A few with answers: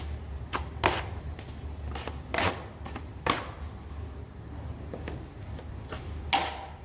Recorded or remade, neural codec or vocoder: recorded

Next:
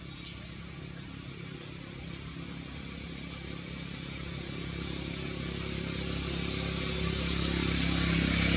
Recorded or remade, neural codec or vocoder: recorded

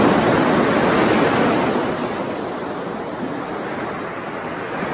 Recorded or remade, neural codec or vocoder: recorded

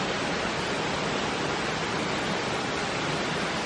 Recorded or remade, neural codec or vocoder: remade, vocoder, BigVGAN v2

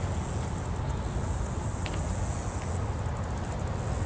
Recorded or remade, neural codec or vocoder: recorded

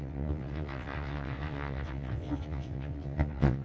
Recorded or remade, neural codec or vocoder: remade, vocoder, WaveNeXt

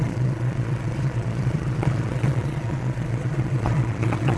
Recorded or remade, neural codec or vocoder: remade, vocoder, Vocos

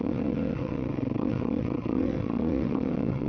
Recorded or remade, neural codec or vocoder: remade, vocoder, WaveNeXt